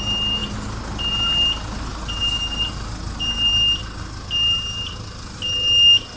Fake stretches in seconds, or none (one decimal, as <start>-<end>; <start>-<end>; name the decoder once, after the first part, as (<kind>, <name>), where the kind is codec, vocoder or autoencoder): none